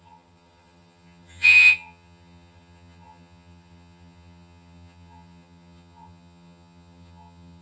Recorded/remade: remade